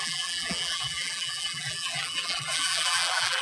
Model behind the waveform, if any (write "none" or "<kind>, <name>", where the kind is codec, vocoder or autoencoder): vocoder, BigVGAN v2